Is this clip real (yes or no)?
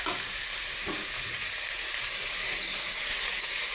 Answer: no